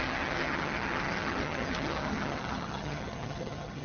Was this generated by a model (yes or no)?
yes